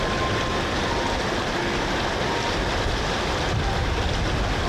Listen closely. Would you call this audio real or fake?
real